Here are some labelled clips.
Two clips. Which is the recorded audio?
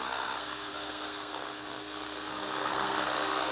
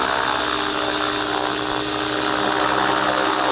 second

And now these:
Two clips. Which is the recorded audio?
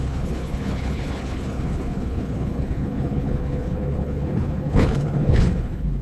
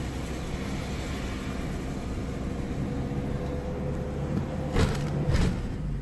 second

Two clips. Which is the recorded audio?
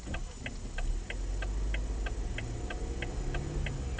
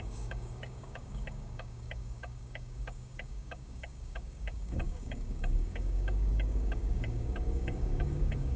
first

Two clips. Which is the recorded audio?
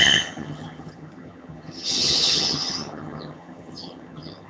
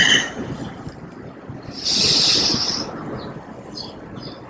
second